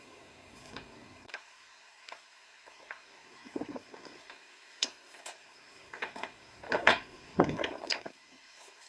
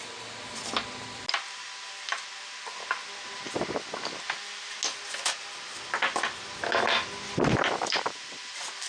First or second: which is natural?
second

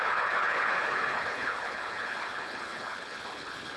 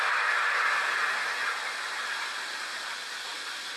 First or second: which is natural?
second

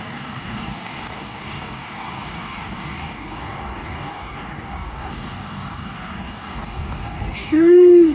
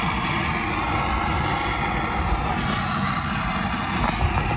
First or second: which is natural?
second